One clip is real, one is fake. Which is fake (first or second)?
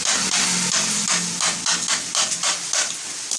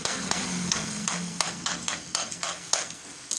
second